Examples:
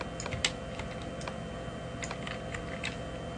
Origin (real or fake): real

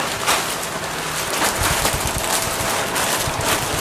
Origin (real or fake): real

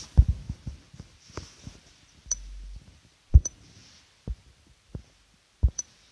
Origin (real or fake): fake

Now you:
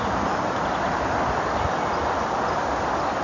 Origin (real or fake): real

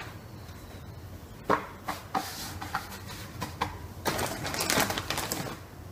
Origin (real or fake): real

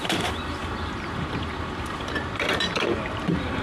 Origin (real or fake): fake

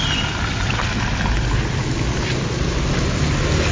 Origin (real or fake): real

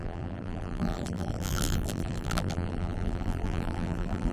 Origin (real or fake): fake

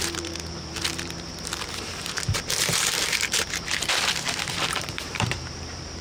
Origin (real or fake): fake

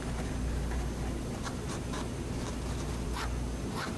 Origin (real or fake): real